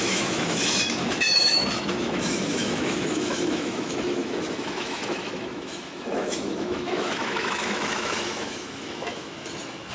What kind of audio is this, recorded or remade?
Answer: remade